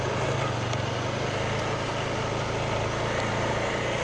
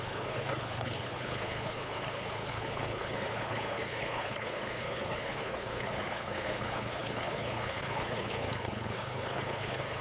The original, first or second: first